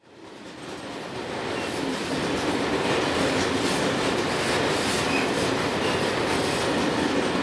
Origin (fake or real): real